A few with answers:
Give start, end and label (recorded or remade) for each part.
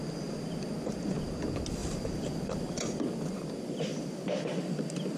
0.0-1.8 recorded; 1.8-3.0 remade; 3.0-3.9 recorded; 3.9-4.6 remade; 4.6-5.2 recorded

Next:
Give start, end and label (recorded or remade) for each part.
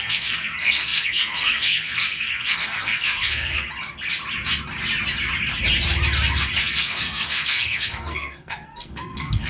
0.0-3.6 remade; 3.6-6.6 recorded; 6.6-9.5 remade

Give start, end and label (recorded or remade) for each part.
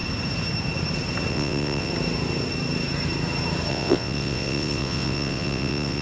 0.0-1.3 recorded; 1.3-1.9 remade; 1.9-3.7 recorded; 3.7-6.0 remade